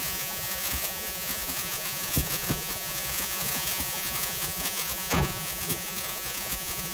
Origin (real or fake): fake